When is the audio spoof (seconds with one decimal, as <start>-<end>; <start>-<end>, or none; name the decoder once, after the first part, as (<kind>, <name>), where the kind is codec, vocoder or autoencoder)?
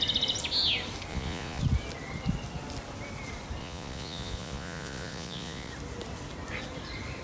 1.1-1.6 (vocoder, Vocos); 3.6-5.7